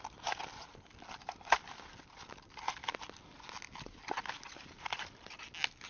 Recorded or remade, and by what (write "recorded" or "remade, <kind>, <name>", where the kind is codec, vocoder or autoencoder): recorded